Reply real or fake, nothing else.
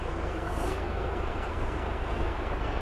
fake